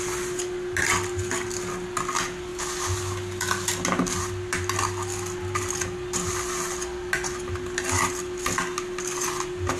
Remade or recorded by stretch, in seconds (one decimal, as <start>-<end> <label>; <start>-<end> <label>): 0.0-9.8 recorded